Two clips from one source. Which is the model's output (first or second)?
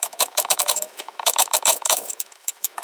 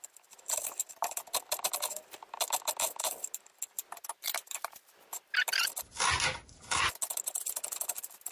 first